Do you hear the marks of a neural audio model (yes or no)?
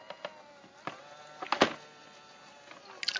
no